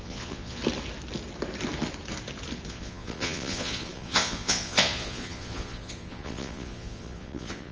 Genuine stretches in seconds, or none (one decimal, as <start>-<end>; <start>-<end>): 0.6-2.7